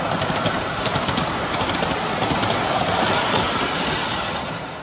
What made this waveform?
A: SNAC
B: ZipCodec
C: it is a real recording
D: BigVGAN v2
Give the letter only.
C